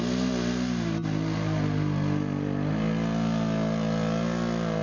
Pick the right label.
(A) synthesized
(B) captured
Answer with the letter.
B